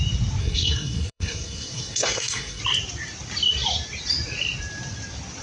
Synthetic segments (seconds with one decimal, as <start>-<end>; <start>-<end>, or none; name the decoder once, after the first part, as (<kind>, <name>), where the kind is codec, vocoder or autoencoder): 0.4-2.6 (codec, SNAC)